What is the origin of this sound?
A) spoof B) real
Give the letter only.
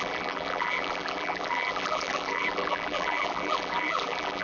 A